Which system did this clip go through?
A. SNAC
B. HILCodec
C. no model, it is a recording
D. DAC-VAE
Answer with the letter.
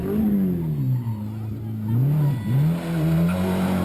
C